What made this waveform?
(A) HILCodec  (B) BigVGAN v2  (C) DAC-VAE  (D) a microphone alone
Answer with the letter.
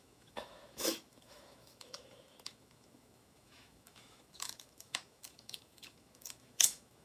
C